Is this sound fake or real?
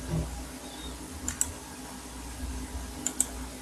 real